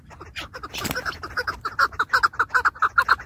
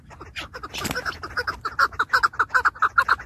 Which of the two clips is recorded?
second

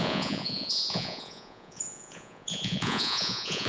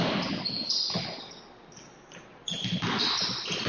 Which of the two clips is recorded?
second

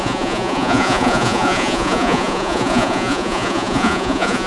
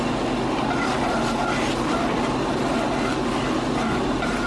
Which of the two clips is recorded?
second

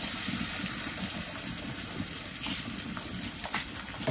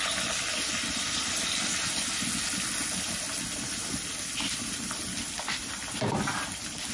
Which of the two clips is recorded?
second